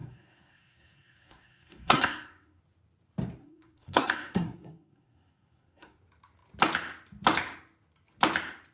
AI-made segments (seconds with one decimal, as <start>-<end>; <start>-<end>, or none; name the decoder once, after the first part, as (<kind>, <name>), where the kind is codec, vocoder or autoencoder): 0.0-2.6 (codec, SNAC); 3.4-6.0